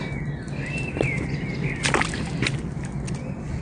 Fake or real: real